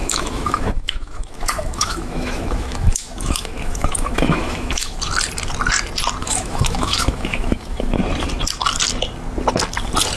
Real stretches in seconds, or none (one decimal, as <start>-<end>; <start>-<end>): 5.0-6.2; 8.0-10.2